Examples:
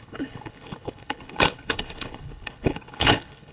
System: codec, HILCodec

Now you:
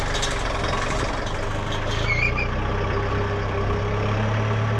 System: none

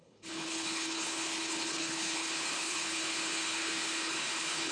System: codec, HILCodec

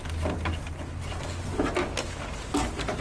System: none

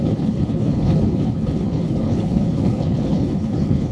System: codec, HILCodec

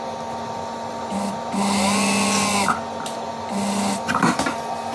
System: none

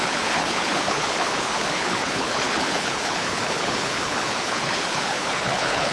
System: codec, HILCodec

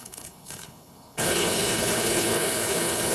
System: codec, HILCodec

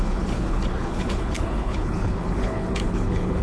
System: codec, HILCodec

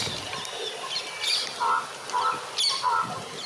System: none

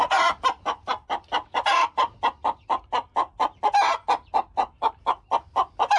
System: none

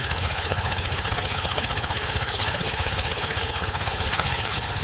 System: codec, HILCodec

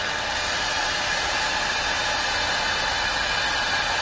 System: none